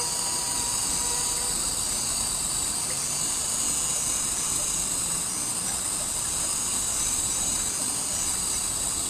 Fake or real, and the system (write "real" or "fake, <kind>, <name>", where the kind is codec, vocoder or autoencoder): real